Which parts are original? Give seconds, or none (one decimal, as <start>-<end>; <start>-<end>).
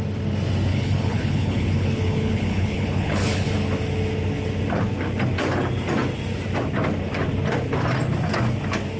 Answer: 0.0-0.7; 3.5-9.0